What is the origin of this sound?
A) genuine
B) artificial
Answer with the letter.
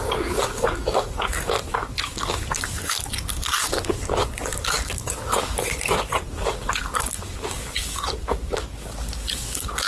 B